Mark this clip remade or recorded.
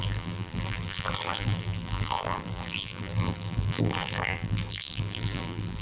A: remade